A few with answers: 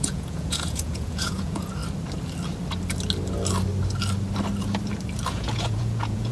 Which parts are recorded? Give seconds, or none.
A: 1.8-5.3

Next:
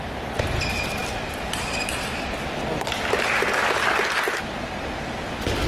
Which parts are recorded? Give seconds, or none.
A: 0.0-5.7

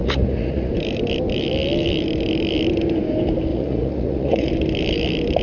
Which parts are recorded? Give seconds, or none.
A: 0.7-3.5; 4.5-5.4

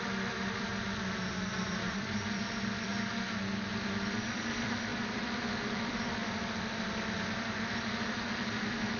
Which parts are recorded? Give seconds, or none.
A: 0.7-1.6; 2.9-3.7

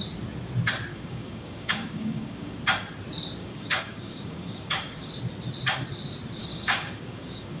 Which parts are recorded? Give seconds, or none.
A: 0.0-0.9; 2.6-3.4; 5.1-6.4

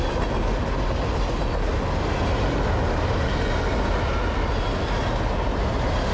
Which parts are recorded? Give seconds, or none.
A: 0.0-6.1